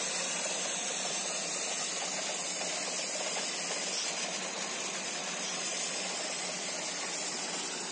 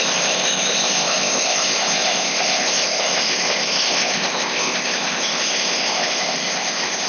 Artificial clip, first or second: second